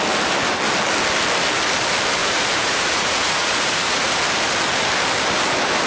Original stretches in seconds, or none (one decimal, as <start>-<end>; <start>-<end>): 0.0-2.2; 4.1-5.9

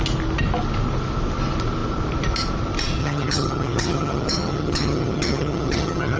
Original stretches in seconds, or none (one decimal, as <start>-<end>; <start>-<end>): 0.0-3.0